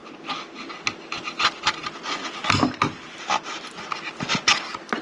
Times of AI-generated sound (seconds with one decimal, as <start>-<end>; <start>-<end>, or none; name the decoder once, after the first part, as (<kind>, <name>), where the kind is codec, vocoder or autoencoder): none